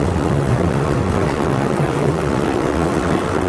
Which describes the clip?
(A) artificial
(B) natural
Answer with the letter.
A